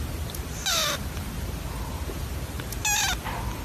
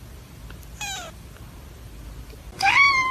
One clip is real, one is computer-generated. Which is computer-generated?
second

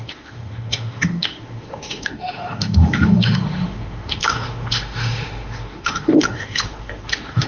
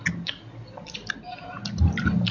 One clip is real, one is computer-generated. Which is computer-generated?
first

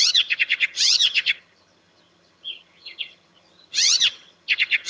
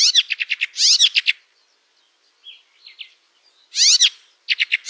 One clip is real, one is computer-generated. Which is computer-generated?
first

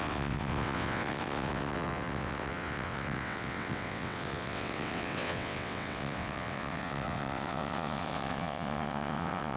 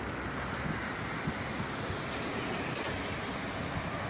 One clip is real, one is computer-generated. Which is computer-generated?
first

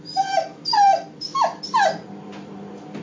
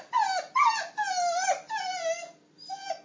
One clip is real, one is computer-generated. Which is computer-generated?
first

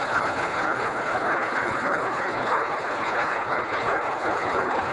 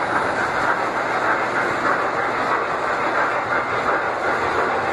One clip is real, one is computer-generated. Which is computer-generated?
first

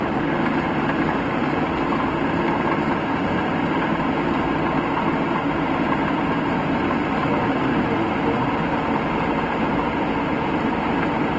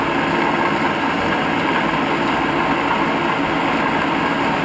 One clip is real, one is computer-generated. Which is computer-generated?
first